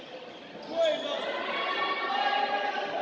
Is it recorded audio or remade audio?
recorded